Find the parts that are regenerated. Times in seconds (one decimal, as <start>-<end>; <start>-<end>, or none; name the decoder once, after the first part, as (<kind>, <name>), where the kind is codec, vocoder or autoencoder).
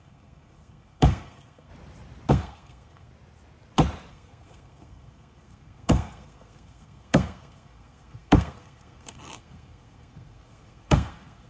0.0-1.7 (codec, SNAC); 2.3-3.1; 4.1-11.5